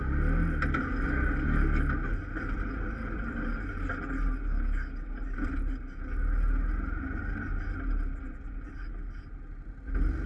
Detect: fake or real real